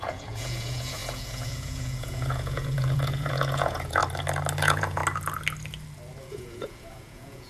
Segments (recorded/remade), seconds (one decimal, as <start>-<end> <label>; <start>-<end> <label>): 0.0-4.0 remade; 4.0-4.6 recorded; 4.6-5.0 remade; 5.0-6.3 recorded; 6.3-7.5 remade